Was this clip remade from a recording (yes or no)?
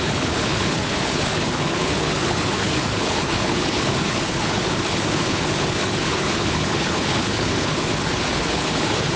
yes